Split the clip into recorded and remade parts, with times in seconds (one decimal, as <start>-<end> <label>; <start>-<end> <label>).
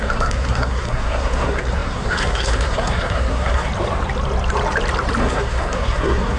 0.0-3.7 remade; 3.7-5.2 recorded; 5.2-6.4 remade